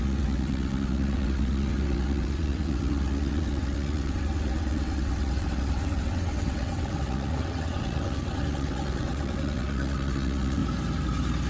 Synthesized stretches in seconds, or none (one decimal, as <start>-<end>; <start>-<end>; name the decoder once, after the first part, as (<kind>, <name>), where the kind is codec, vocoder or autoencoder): 0.0-10.6 (vocoder, WaveNeXt)